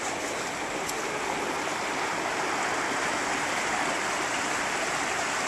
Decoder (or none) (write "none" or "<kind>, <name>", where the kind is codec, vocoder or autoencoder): none